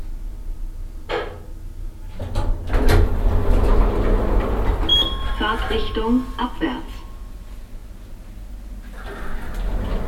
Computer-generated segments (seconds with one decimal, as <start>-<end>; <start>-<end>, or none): none